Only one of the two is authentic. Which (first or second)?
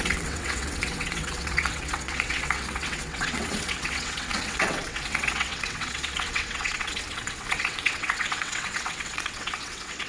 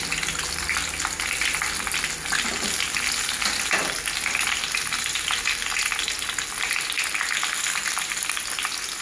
second